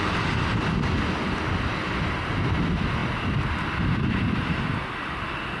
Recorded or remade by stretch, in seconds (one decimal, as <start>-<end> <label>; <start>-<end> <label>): 0.0-5.6 recorded